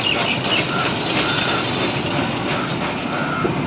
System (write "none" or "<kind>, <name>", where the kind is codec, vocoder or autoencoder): none